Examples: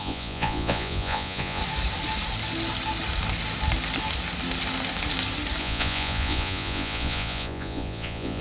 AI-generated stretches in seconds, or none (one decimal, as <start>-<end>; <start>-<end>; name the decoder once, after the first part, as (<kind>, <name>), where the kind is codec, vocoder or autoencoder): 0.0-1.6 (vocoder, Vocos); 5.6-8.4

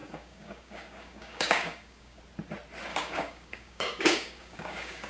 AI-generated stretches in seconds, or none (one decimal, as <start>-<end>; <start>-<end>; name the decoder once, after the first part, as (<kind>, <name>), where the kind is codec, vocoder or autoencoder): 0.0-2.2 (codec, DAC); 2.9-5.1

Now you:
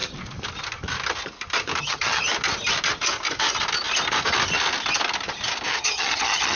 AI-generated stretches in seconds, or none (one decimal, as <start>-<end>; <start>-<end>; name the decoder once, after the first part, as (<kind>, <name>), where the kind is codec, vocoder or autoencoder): 1.8-2.2 (vocoder, HiFi-GAN); 5.7-6.6